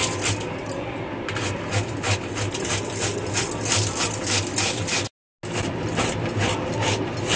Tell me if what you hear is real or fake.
real